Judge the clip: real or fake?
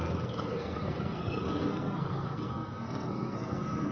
fake